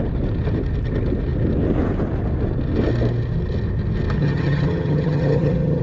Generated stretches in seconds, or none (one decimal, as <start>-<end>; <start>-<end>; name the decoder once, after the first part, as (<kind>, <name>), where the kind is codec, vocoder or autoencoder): 4.2-5.8 (vocoder, HiFi-GAN)